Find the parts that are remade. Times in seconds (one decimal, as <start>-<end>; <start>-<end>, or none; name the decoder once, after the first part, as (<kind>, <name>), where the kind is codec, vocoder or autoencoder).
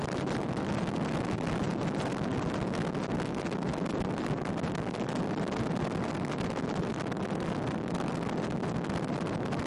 none